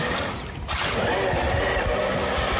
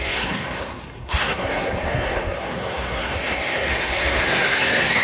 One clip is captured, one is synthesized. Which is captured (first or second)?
first